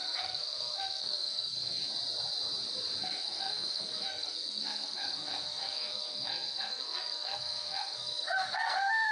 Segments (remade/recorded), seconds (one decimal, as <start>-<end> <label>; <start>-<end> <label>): 0.0-1.8 remade; 1.8-3.0 recorded; 3.0-9.1 remade